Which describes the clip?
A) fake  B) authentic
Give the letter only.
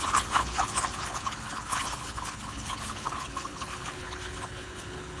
A